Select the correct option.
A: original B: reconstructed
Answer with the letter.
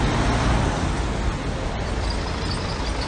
A